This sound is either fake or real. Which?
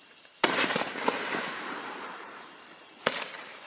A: fake